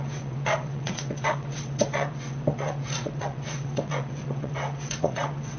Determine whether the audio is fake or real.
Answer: fake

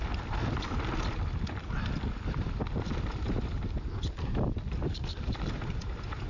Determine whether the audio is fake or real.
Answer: real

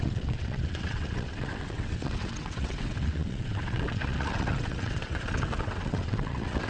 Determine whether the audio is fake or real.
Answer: fake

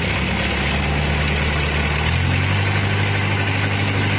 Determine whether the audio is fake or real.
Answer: real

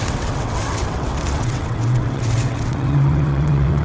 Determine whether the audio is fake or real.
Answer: fake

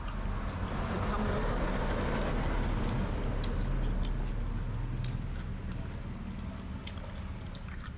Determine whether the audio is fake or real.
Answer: real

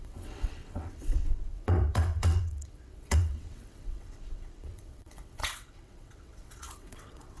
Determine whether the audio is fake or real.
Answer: fake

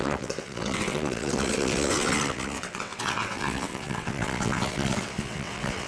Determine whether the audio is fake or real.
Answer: fake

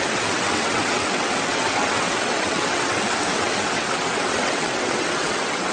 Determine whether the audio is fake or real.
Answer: fake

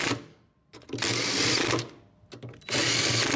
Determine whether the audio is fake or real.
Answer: real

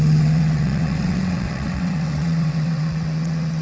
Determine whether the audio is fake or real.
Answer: fake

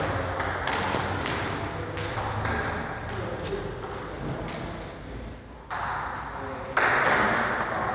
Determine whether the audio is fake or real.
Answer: real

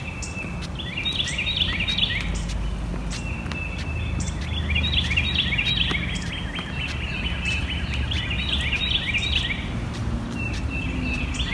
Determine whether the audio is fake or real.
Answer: real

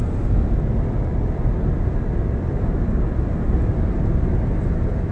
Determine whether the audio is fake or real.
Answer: real